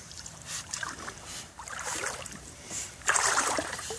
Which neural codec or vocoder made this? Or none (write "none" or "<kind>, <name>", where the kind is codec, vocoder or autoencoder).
vocoder, BigVGAN v2